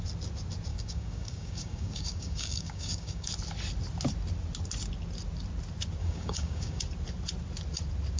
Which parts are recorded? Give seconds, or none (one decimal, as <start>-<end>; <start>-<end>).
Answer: 0.0-0.7; 3.3-6.0; 6.8-8.2